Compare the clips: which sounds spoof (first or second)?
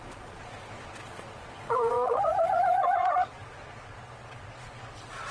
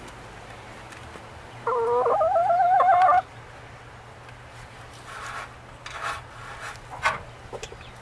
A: first